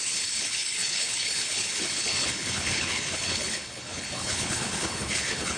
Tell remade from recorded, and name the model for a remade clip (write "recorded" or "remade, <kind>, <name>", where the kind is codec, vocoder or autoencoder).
remade, codec, HILCodec